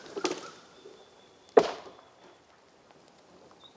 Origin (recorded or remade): recorded